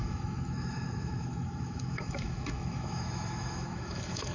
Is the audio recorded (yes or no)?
no